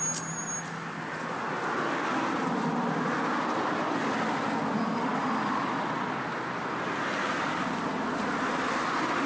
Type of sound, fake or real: real